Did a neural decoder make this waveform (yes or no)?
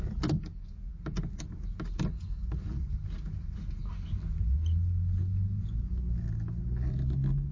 no